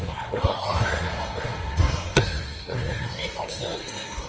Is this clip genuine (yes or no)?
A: no